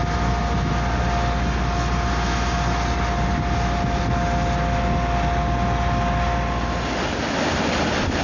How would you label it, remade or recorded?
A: recorded